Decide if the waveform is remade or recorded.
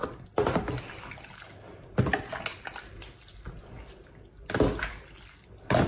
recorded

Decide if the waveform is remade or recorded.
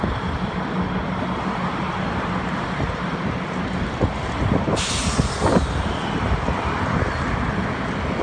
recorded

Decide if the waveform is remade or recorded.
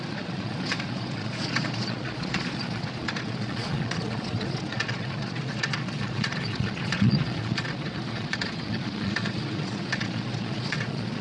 remade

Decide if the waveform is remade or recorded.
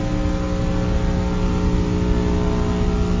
recorded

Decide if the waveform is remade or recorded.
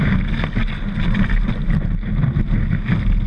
recorded